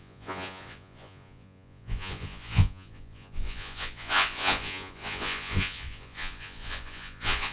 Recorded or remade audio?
remade